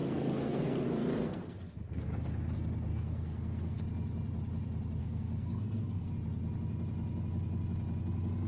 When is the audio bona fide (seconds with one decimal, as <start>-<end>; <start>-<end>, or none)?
2.0-2.9; 3.8-5.0; 6.1-8.5